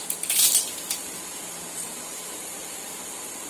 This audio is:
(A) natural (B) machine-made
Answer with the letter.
B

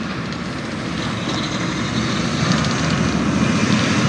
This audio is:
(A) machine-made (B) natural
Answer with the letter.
B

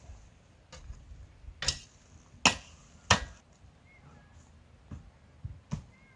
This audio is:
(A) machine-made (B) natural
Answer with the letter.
B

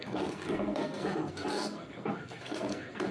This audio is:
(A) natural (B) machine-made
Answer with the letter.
B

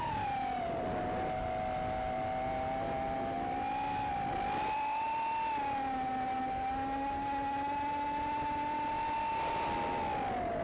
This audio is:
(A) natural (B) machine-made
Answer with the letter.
A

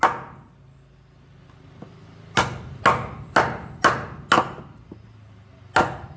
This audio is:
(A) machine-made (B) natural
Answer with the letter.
B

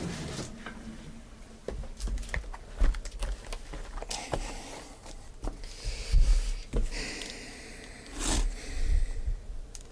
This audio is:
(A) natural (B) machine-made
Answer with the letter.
A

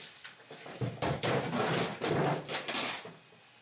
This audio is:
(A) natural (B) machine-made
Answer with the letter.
A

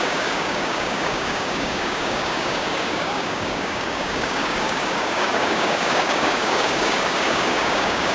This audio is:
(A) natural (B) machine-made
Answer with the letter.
B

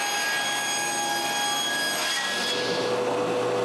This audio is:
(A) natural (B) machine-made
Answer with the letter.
A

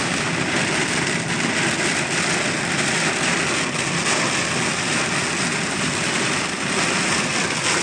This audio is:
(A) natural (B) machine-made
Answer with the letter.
A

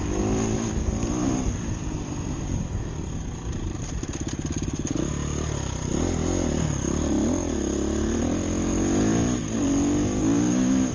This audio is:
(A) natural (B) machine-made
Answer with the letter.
A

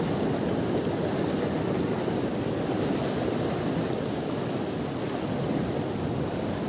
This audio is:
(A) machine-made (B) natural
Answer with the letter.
B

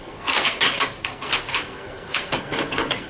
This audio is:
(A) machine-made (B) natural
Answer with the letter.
A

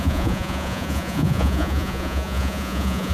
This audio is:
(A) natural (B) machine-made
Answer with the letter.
B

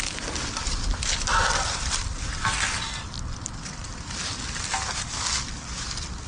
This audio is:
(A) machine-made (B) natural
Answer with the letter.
B